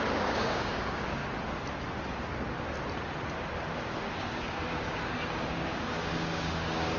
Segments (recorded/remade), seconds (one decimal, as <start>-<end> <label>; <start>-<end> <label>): 0.0-1.2 remade; 1.2-3.8 recorded; 3.8-7.0 remade